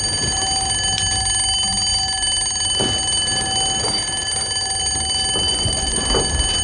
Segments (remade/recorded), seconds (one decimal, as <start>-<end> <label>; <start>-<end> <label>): 0.0-5.5 recorded; 5.5-6.0 remade; 6.0-6.6 recorded